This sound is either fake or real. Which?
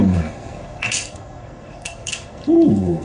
fake